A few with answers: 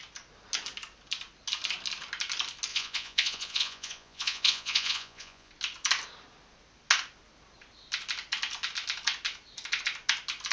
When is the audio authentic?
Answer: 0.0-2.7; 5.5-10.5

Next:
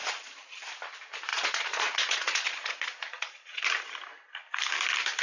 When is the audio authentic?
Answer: 0.6-1.3; 3.6-5.2

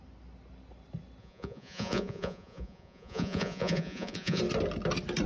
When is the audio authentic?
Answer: 0.0-1.2; 4.4-5.3

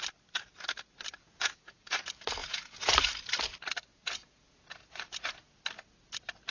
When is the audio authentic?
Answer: 0.0-1.2; 2.0-2.4; 2.9-3.9; 5.6-6.5

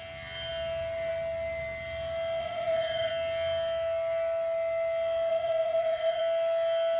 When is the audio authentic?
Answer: 0.0-2.4; 3.1-5.3; 6.2-7.0